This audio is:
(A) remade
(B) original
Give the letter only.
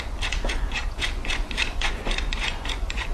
A